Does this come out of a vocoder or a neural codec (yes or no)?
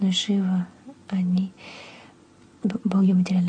no